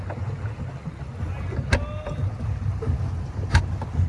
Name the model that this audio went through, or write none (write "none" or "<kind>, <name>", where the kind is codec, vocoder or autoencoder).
none